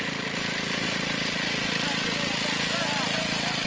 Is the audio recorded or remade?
recorded